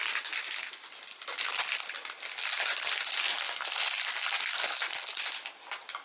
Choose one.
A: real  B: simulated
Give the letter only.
A